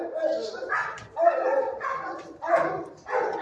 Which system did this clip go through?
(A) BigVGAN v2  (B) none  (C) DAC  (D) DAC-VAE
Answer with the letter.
A